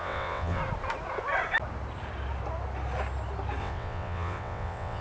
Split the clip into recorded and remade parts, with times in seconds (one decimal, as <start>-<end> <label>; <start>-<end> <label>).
0.0-0.6 remade; 0.6-3.6 recorded; 3.6-5.0 remade